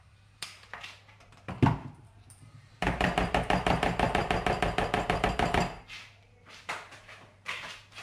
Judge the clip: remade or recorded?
remade